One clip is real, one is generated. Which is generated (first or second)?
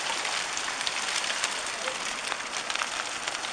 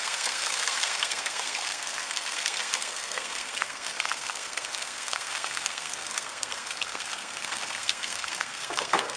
second